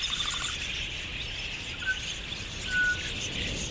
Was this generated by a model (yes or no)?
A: no